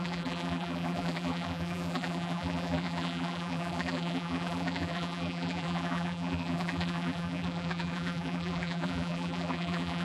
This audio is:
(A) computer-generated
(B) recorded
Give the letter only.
A